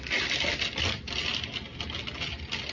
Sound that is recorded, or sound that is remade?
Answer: recorded